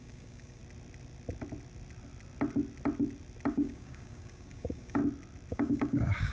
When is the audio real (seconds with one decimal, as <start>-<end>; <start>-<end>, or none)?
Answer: 0.6-3.5; 5.0-5.5